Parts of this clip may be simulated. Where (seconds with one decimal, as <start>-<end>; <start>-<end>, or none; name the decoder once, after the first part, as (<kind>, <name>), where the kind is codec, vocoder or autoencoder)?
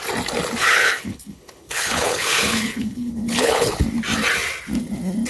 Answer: 0.6-3.8 (codec, HILCodec)